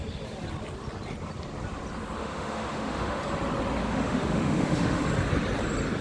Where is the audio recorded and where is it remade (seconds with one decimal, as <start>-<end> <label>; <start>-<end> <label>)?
0.0-2.2 recorded; 2.2-3.2 remade; 3.2-3.8 recorded; 3.8-5.0 remade; 5.0-6.0 recorded